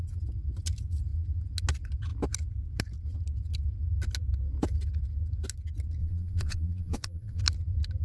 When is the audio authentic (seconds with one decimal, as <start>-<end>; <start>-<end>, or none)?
0.0-6.0; 7.4-8.0

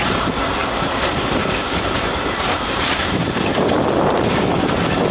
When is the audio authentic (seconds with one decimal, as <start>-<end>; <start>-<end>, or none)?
0.0-0.6; 3.7-5.1

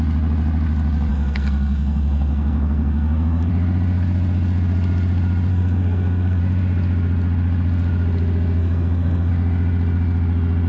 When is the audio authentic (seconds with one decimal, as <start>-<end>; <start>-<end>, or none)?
0.0-1.1; 3.5-5.5; 6.4-8.6; 9.3-10.7

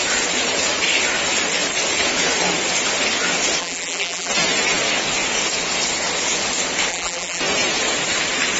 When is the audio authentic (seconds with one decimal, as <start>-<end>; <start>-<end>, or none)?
0.0-3.6; 4.3-6.9; 7.4-8.6

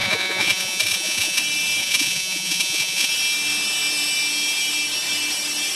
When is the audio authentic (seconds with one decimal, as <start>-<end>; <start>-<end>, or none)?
1.4-1.8; 3.1-5.8

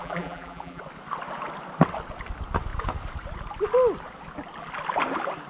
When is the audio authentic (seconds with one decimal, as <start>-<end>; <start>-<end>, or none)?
0.8-5.5

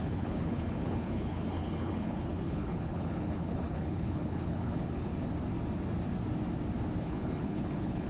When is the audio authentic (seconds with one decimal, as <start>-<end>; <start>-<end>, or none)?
5.1-7.0

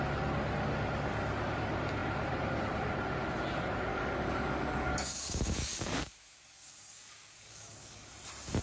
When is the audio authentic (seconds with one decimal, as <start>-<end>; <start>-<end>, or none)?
0.0-3.9; 8.1-8.6